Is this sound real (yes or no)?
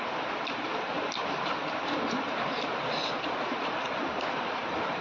no